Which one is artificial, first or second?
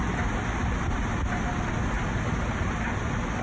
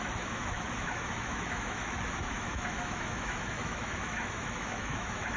second